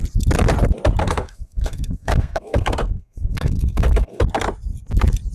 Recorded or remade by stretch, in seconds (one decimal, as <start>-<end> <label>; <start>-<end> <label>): 0.0-1.0 recorded; 1.0-4.2 remade; 4.2-5.3 recorded